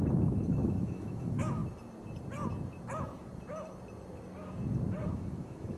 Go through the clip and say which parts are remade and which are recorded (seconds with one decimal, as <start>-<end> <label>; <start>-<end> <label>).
0.0-1.6 remade; 1.6-5.1 recorded; 5.1-5.8 remade